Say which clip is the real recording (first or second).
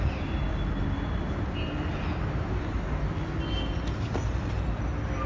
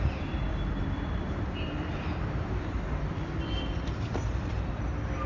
first